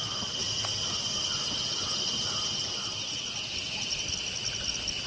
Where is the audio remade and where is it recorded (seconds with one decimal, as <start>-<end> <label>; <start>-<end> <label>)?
0.0-5.1 recorded